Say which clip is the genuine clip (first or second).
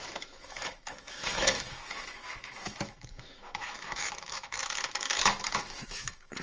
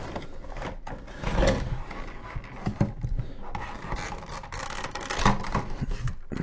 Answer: second